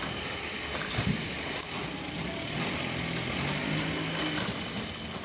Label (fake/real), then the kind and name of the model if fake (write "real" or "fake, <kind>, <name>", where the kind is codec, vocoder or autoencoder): real